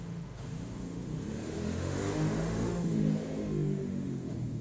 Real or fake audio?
fake